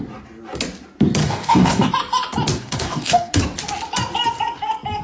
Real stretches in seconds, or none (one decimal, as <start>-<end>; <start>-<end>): 0.0-1.2; 1.9-2.5; 3.4-5.0